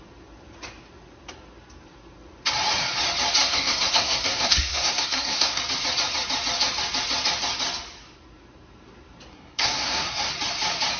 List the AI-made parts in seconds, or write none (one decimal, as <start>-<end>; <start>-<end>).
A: 3.4-5.6; 9.3-10.3